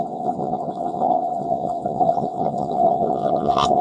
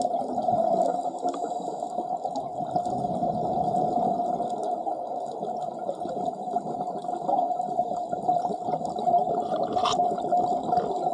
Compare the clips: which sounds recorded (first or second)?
second